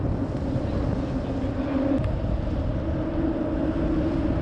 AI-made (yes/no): no